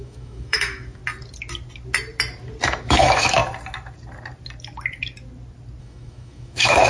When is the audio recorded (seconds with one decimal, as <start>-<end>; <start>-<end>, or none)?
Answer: 1.0-2.7; 3.4-5.8